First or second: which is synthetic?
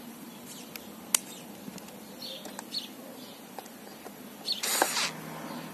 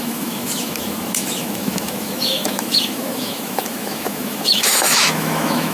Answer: second